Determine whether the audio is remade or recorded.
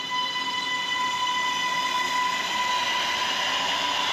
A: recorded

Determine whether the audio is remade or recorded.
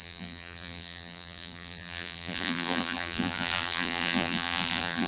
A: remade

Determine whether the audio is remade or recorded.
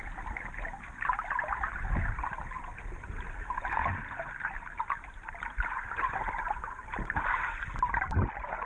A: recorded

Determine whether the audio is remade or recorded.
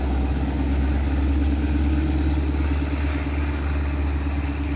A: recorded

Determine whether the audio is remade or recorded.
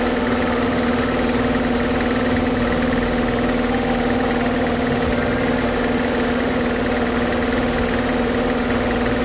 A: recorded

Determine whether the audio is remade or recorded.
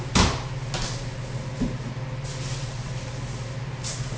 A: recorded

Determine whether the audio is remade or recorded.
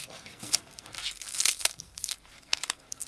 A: remade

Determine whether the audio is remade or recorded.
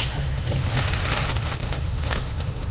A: remade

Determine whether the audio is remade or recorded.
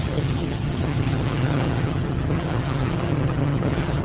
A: remade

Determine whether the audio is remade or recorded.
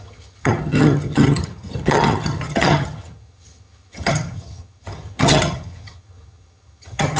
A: remade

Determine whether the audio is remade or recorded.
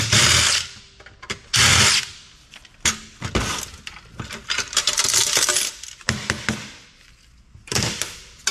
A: recorded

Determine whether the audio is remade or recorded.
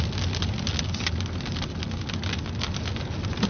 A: recorded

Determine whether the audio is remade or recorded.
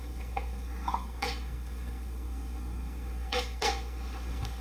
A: remade